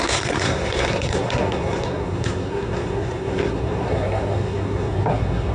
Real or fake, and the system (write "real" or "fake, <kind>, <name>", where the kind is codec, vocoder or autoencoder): fake, codec, SNAC